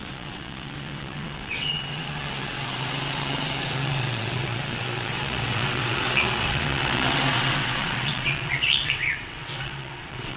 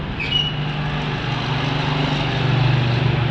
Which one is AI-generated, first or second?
first